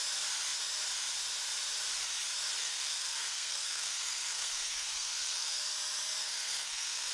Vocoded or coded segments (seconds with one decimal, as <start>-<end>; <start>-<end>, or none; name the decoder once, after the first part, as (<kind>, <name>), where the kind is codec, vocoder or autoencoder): 2.6-5.6 (codec, SNAC); 6.2-7.1